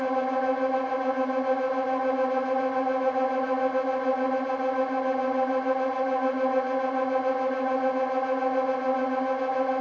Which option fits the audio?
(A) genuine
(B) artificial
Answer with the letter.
A